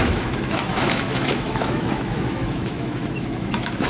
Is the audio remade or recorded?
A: remade